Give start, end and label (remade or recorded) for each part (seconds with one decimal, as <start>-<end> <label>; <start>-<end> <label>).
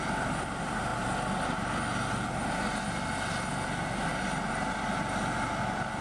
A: 0.0-0.9 remade; 0.9-4.5 recorded; 4.5-6.0 remade